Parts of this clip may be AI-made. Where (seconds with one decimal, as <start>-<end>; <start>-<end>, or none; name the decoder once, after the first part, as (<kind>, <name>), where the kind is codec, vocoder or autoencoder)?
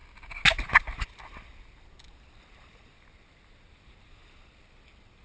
none